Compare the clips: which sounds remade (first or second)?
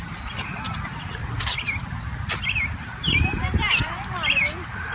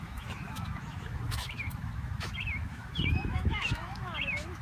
second